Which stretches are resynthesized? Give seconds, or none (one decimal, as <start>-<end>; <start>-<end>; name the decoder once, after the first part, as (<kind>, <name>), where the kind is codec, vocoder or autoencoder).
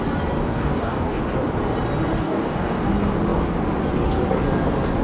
0.4-1.2 (codec, DAC); 2.1-2.9